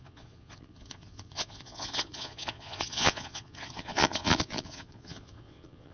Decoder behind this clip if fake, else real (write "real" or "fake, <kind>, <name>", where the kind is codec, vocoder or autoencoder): fake, vocoder, Vocos